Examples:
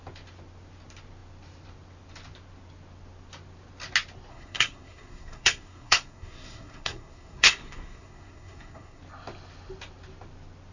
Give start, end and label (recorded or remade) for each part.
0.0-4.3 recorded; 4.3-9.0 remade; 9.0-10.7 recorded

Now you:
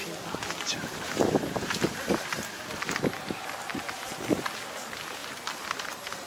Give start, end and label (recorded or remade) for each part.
0.0-6.3 recorded

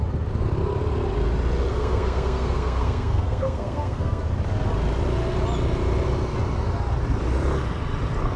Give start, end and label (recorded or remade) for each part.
0.0-1.7 recorded; 1.7-4.2 remade; 4.2-8.4 recorded

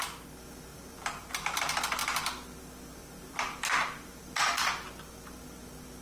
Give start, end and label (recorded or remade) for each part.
0.0-0.7 recorded; 0.7-1.6 remade; 1.6-3.0 recorded; 3.0-4.2 remade; 4.2-6.0 recorded

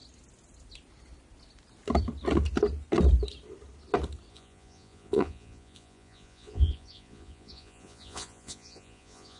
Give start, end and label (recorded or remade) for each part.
0.0-4.3 recorded; 4.3-9.4 remade

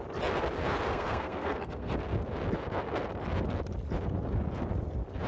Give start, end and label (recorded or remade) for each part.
0.0-0.9 recorded; 0.9-1.9 remade; 1.9-5.3 recorded

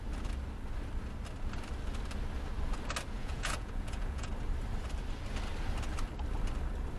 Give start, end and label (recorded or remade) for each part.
0.0-3.2 recorded; 3.2-4.3 remade; 4.3-7.0 recorded

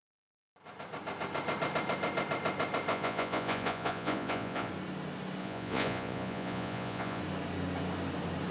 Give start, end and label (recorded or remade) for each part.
0.0-2.9 recorded; 2.9-4.7 remade; 4.7-5.4 recorded; 5.4-7.2 remade; 7.2-8.5 recorded